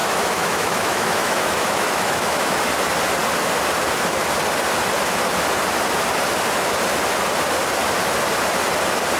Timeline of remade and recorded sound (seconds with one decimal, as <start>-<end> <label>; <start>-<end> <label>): 0.0-2.6 remade; 2.6-9.2 recorded